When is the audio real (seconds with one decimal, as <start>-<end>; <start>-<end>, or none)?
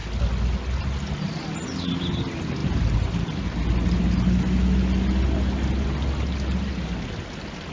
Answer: 0.0-7.7